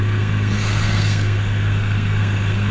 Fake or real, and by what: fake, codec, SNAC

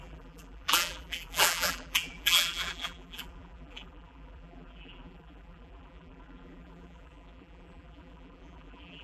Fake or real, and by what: fake, vocoder, BigVGAN v2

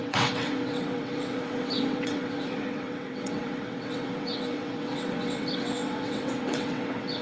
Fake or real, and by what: fake, vocoder, WaveNeXt